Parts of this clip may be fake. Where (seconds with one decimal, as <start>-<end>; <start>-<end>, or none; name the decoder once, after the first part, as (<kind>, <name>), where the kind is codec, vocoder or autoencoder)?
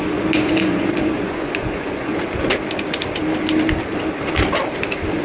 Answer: 0.0-2.1 (vocoder, Vocos)